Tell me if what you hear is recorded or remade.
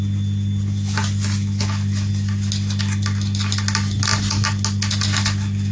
recorded